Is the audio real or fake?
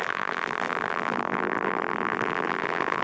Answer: fake